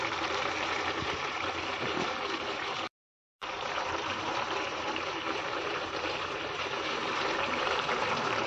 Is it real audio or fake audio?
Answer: fake